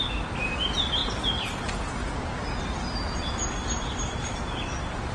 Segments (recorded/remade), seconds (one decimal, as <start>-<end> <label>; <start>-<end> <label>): 0.0-5.1 recorded